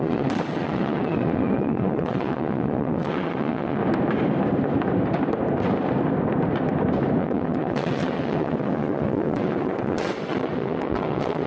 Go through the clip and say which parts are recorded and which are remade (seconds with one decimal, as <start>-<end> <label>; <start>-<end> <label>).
0.0-3.8 remade; 3.8-7.2 recorded; 7.2-11.5 remade

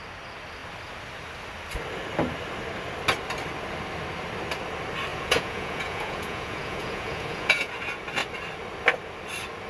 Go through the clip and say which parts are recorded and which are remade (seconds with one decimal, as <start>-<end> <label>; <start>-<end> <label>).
0.0-5.1 recorded; 5.1-7.7 remade; 7.7-9.7 recorded

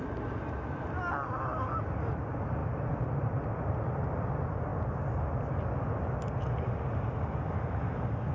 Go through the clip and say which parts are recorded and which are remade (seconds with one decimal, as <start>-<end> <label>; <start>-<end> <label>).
0.0-8.3 recorded

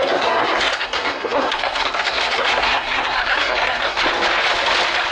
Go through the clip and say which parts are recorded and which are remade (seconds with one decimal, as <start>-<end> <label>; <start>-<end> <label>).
0.0-4.0 remade; 4.0-5.1 recorded

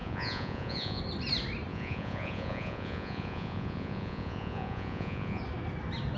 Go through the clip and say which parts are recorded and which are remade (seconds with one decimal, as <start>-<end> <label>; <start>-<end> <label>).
0.0-1.0 remade; 1.0-1.7 recorded; 1.7-5.4 remade; 5.4-6.2 recorded

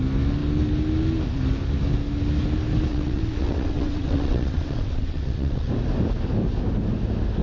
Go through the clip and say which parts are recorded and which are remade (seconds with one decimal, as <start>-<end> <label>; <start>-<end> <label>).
0.0-2.9 recorded; 2.9-5.7 remade; 5.7-7.4 recorded

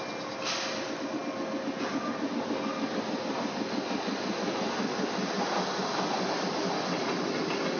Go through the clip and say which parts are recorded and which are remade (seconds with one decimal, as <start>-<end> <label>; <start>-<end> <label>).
0.0-7.8 recorded

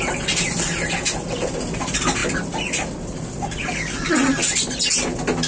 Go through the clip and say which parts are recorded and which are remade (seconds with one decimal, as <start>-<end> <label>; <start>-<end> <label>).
0.0-5.5 recorded